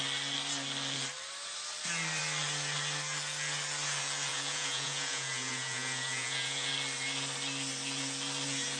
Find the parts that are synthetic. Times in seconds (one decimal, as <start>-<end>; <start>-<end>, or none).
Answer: 4.3-6.7